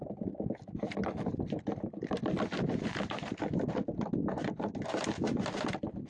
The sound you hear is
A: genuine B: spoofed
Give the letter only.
B